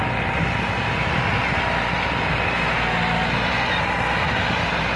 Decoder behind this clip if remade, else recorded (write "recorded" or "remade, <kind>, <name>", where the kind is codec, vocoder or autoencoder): recorded